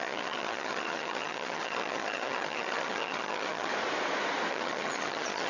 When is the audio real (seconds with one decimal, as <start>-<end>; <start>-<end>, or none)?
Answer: 3.7-4.5